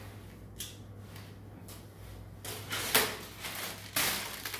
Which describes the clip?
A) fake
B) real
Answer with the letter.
B